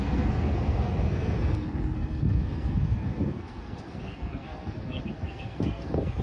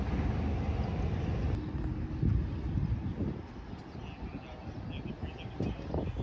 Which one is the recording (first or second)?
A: second